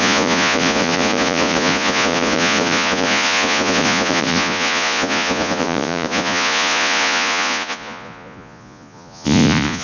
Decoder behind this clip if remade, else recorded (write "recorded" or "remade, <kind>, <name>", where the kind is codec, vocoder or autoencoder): remade, vocoder, Vocos